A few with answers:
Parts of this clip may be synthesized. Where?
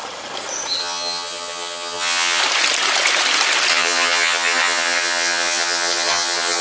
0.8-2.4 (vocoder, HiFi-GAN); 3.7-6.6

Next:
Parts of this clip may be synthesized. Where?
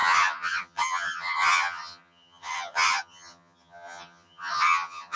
0.0-5.2 (vocoder, HiFi-GAN)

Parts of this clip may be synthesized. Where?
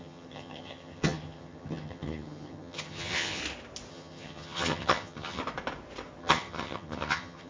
0.0-3.4 (vocoder, HiFi-GAN); 3.9-5.4; 6.2-7.5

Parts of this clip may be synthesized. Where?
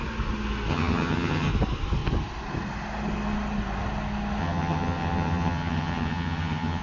0.7-1.5 (vocoder, HiFi-GAN); 4.4-6.8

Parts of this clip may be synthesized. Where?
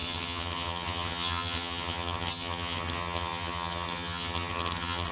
0.0-5.1 (vocoder, HiFi-GAN)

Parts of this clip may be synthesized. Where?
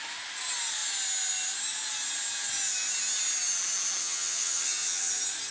4.0-5.1 (vocoder, HiFi-GAN)